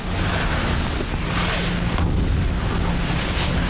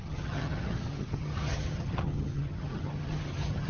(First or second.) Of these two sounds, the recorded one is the first